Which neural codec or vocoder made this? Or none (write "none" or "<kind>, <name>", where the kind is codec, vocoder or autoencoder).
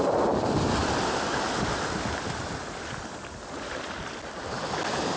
none